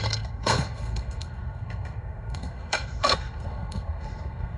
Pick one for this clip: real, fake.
fake